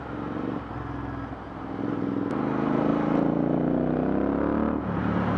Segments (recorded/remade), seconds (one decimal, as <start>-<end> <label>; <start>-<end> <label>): 0.0-5.4 recorded